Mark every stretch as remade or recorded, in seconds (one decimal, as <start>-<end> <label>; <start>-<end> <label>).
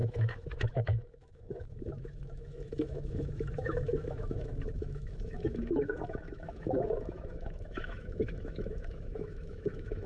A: 0.0-10.1 remade